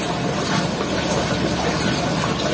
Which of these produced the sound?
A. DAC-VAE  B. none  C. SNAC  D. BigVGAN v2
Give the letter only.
B